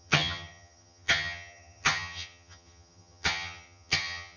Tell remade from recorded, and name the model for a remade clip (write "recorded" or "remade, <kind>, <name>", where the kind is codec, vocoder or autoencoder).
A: remade, vocoder, HiFi-GAN